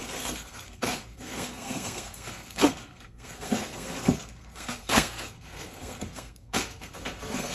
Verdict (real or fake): fake